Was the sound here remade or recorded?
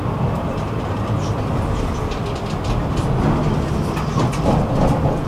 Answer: recorded